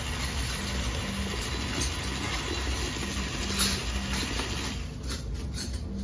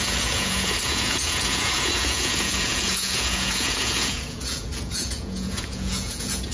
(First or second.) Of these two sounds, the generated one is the second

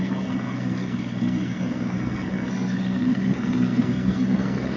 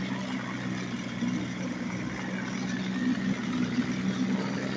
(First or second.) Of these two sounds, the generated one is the first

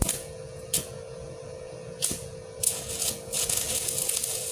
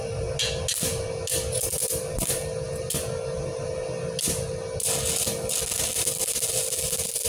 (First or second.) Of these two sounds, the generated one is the first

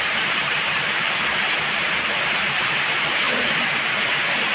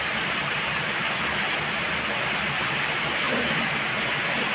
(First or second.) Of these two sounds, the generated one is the first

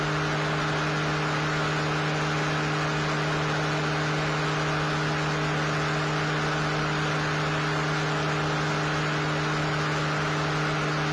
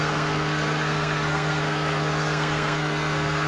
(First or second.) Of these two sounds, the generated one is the second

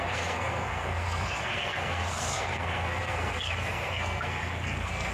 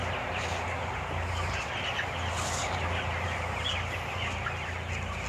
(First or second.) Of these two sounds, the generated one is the first